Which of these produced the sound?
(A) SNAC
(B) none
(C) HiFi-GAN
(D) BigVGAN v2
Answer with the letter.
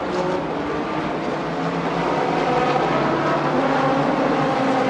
B